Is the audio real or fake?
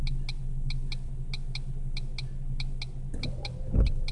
real